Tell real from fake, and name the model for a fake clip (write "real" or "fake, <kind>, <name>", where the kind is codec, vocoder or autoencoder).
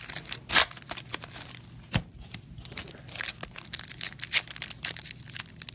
real